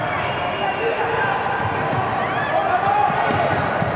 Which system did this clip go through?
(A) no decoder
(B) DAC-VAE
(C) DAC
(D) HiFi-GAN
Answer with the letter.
A